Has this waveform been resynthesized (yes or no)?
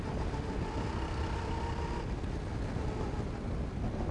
no